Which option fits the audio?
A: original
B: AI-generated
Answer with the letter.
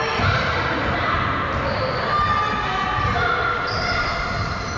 A